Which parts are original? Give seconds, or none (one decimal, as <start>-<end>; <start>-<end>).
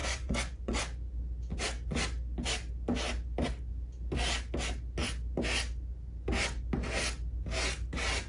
0.8-8.3